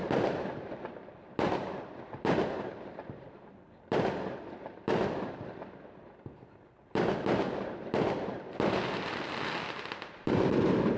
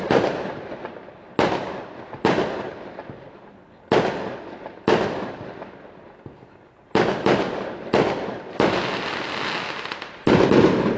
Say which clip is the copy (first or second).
first